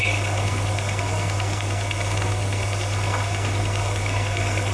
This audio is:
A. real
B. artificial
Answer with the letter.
B